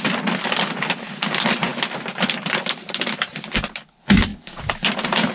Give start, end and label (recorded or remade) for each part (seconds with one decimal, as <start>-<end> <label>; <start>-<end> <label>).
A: 0.0-5.3 recorded